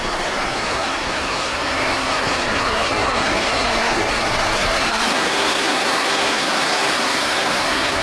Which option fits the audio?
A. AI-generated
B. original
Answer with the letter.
A